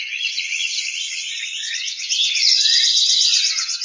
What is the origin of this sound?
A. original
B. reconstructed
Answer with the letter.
B